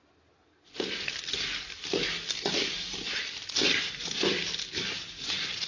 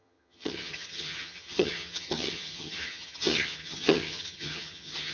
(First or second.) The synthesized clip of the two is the second